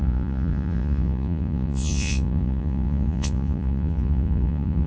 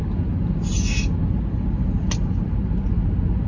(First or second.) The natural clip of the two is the second